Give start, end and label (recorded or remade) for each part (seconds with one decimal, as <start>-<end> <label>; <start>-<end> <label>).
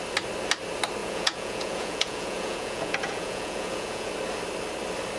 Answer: 0.0-1.0 recorded; 1.0-4.1 remade; 4.1-5.2 recorded